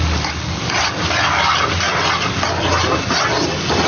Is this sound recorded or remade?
recorded